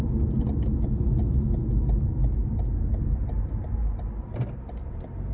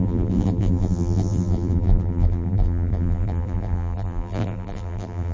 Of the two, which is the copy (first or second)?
second